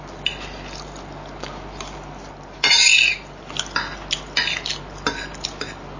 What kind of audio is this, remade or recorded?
recorded